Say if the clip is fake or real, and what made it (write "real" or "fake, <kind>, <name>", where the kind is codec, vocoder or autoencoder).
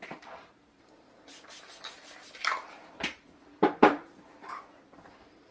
fake, vocoder, BigVGAN v2